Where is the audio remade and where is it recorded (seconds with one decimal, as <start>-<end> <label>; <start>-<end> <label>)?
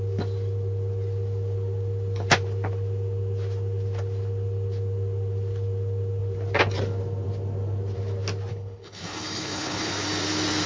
0.0-8.5 recorded; 8.5-9.9 remade; 9.9-10.7 recorded